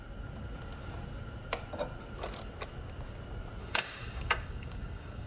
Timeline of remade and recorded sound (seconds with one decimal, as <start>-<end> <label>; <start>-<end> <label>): 0.0-3.6 recorded; 3.6-5.3 remade